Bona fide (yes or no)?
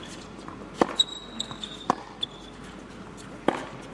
no